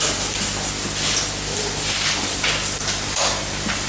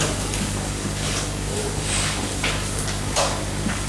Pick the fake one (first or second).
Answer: second